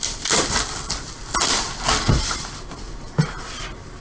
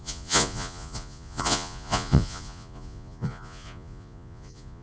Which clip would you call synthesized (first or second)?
second